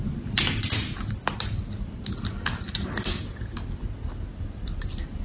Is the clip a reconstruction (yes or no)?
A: no